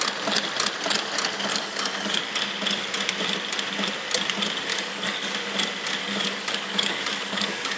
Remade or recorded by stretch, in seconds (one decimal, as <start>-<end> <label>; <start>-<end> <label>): 0.0-1.5 recorded; 1.5-2.2 remade; 2.2-4.7 recorded; 4.7-5.3 remade; 5.3-6.0 recorded; 6.0-7.8 remade